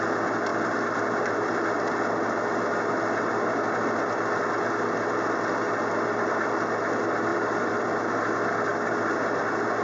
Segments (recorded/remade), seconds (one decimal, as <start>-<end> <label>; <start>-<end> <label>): 0.0-0.5 recorded; 0.5-1.5 remade; 1.5-7.3 recorded; 7.3-8.0 remade; 8.0-8.7 recorded; 8.7-9.8 remade